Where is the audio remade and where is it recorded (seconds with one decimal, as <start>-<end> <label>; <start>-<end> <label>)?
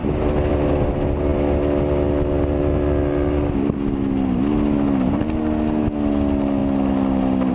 0.0-7.5 recorded